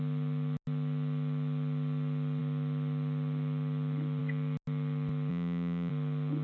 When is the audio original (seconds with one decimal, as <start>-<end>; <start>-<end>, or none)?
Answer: 0.0-5.3; 5.9-6.4